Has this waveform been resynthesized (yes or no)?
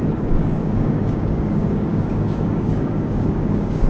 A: yes